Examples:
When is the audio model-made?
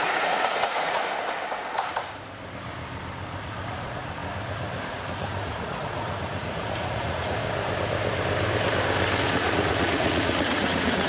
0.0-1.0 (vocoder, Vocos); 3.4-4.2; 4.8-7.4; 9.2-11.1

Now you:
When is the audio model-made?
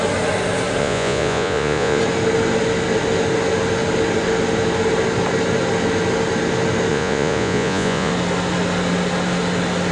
0.8-2.0 (vocoder, Vocos); 6.9-8.1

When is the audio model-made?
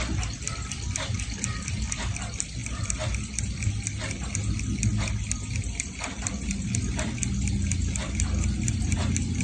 none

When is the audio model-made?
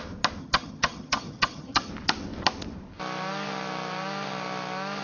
0.4-1.9 (vocoder, HiFi-GAN)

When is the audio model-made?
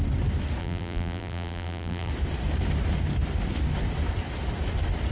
0.6-2.1 (vocoder, BigVGAN v2)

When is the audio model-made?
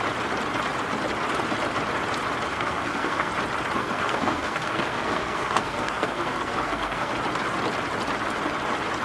2.5-3.3 (codec, SNAC); 3.8-7.1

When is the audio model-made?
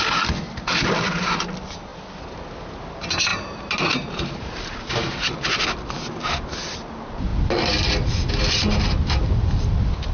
3.3-4.9 (vocoder, BigVGAN v2)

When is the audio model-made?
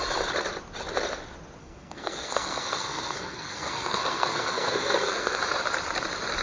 1.6-5.4 (codec, SNAC)